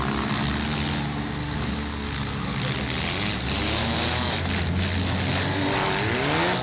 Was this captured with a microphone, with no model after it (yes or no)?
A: yes